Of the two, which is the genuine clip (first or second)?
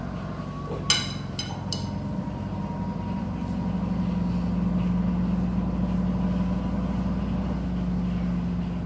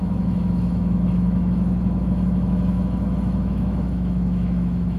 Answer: first